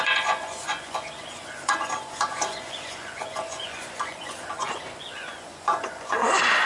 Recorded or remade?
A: remade